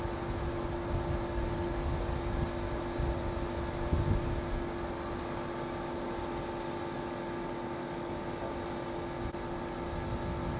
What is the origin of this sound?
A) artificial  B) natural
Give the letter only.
B